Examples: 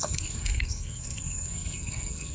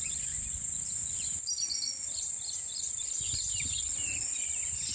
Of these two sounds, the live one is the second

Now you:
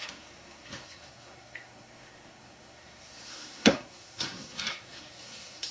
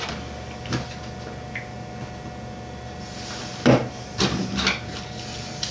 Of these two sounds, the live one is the second